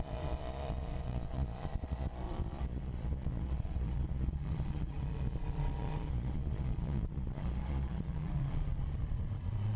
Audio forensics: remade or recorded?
remade